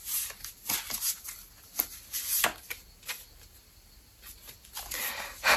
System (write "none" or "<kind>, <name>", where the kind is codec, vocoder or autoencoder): none